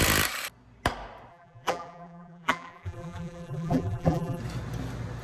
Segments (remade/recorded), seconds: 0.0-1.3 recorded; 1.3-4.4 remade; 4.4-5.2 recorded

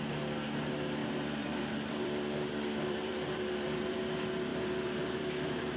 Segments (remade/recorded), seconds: 0.0-1.0 recorded; 1.0-4.0 remade; 4.0-4.5 recorded; 4.5-5.8 remade

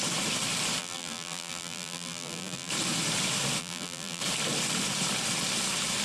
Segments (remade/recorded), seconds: 0.0-0.8 recorded; 0.8-2.7 remade; 2.7-3.6 recorded; 3.6-4.2 remade; 4.2-6.0 recorded

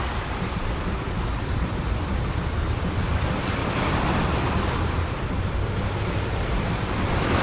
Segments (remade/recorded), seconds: 0.0-3.6 remade; 3.6-7.4 recorded

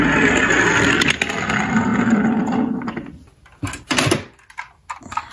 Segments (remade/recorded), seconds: 0.0-5.3 recorded

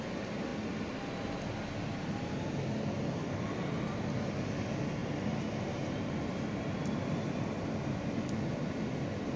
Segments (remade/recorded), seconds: 0.0-6.8 recorded; 6.8-9.4 remade